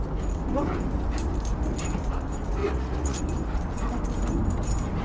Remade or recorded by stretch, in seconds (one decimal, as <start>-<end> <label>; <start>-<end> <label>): 0.0-2.6 recorded; 2.6-3.2 remade; 3.2-5.0 recorded